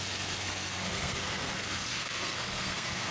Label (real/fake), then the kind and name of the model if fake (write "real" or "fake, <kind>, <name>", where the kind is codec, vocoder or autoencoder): fake, codec, SNAC